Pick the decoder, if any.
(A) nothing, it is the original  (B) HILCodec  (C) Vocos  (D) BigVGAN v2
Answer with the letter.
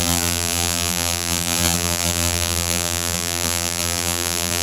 D